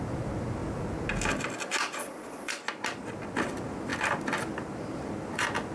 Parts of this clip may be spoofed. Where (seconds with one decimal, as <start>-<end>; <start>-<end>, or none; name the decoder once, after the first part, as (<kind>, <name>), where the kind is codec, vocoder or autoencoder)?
2.0-2.5 (vocoder, Vocos)